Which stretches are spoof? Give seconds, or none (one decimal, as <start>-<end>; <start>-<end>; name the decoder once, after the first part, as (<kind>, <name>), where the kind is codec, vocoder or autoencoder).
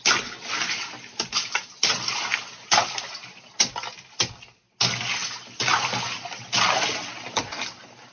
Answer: none